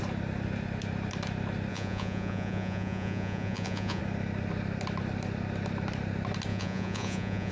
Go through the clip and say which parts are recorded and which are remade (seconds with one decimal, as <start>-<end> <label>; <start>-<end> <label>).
0.0-1.7 recorded; 1.7-4.0 remade; 4.0-6.5 recorded; 6.5-7.5 remade